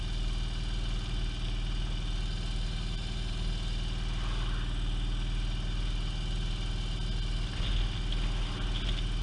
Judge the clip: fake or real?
real